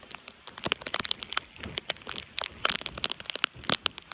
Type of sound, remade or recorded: recorded